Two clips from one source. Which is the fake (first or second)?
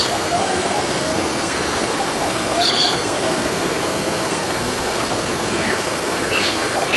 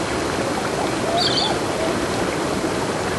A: first